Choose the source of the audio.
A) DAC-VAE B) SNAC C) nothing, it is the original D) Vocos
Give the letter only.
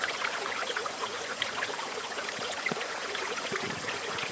D